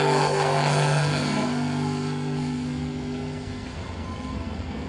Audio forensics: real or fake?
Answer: fake